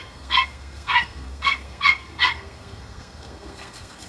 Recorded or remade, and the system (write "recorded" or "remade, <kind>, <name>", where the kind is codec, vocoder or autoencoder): remade, codec, SNAC